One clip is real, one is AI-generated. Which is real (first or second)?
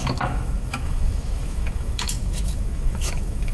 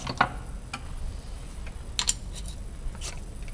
second